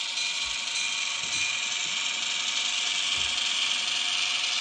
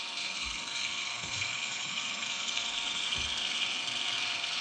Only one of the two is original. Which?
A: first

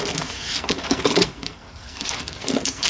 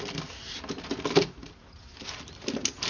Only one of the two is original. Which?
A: second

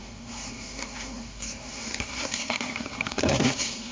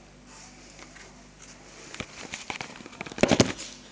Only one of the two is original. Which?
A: second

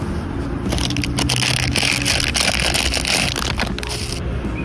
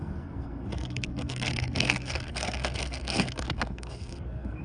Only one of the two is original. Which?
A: first